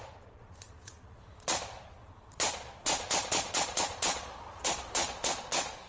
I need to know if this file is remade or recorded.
remade